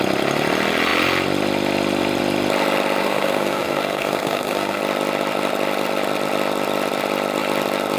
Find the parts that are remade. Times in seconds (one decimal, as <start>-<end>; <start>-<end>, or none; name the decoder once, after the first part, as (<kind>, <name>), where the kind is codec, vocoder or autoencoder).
3.0-4.8 (codec, SNAC)

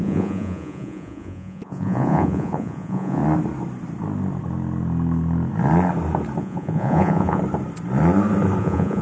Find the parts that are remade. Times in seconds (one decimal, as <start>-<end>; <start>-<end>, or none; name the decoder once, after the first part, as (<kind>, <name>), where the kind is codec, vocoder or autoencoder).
0.0-3.2 (vocoder, Vocos); 6.4-7.4; 8.6-9.0

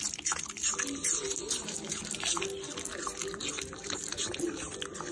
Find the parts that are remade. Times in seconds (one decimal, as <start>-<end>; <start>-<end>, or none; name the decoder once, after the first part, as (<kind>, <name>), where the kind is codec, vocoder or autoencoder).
none